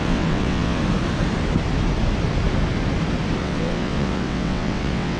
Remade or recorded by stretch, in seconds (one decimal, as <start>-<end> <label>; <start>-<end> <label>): 0.0-0.8 remade; 0.8-3.4 recorded; 3.4-5.2 remade